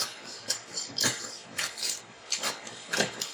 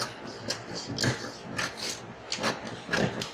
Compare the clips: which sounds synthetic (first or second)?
first